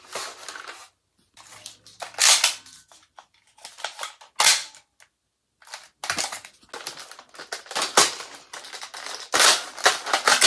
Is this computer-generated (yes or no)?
no